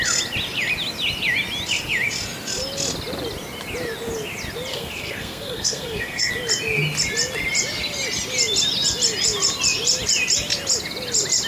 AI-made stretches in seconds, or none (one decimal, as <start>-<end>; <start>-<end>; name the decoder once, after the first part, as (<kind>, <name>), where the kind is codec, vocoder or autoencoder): 4.7-6.3 (codec, SNAC)